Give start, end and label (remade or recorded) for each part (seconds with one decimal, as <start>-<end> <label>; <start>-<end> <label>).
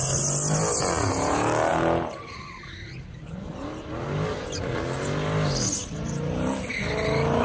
0.0-7.4 recorded